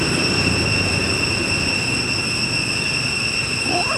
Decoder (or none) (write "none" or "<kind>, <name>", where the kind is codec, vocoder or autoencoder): none